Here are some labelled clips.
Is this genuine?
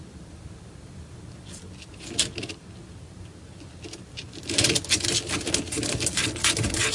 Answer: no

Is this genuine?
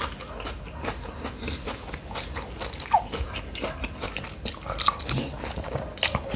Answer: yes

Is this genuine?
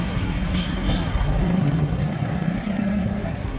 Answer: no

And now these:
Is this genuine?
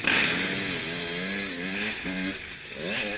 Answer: yes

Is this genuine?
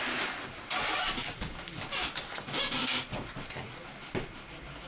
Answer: yes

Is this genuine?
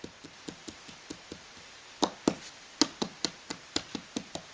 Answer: yes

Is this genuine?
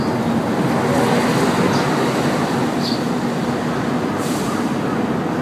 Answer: yes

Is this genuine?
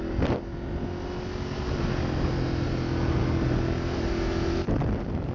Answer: yes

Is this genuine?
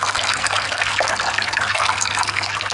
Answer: no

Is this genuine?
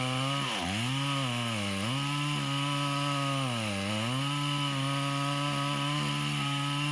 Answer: yes